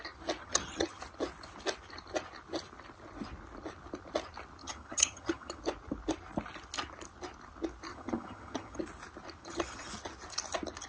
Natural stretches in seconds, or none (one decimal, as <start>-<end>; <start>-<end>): 0.0-0.4; 1.0-4.6; 5.6-7.9; 8.8-9.4; 9.9-10.9

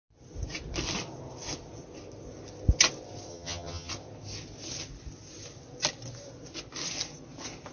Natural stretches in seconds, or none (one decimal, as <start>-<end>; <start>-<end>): 0.0-3.3; 3.9-7.7

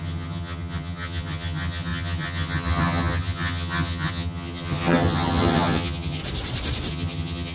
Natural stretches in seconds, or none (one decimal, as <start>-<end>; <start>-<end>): 6.2-6.9

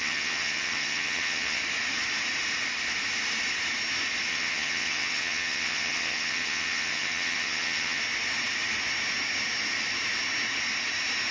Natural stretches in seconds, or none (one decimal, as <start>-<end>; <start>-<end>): 1.6-4.3; 8.0-11.3